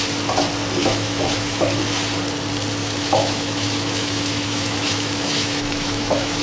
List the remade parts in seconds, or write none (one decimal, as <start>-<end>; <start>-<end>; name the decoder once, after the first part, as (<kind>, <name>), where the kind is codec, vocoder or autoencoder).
0.8-1.8 (autoencoder, DAC-VAE); 2.8-6.4